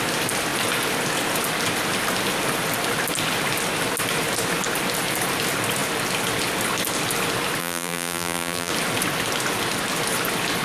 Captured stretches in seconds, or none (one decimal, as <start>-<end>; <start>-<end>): 0.0-7.6; 8.7-10.6